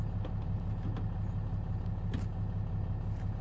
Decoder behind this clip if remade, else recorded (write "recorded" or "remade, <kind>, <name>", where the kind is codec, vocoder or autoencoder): recorded